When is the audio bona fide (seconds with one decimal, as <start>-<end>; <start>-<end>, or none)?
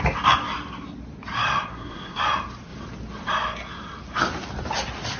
0.0-1.7; 2.2-5.2